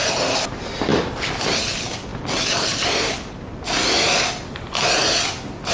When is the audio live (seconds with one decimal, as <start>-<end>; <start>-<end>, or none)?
0.0-5.7